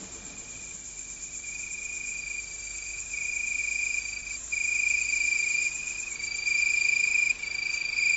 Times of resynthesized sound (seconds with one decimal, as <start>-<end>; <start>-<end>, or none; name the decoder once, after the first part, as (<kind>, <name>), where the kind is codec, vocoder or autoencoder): 0.0-3.6 (vocoder, BigVGAN v2); 4.2-8.2